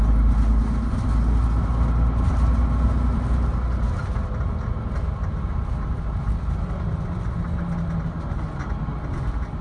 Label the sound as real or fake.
real